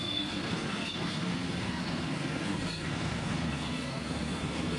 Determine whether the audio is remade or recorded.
remade